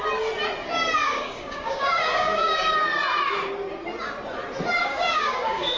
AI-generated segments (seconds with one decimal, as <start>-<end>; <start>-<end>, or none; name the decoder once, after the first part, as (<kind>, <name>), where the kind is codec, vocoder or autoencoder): 1.0-2.8 (codec, DAC); 4.8-5.8